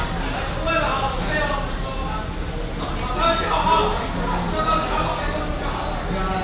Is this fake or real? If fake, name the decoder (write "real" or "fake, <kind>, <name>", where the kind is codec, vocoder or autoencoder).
real